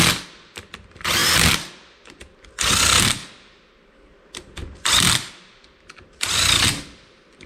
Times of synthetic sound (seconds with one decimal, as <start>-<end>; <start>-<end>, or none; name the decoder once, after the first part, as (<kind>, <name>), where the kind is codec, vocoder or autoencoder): none